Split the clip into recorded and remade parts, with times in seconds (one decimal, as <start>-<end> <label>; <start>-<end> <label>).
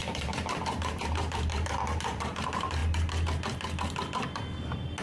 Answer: 0.0-2.8 remade; 2.8-5.0 recorded